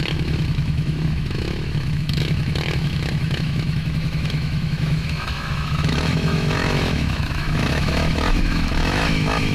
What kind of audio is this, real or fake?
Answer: fake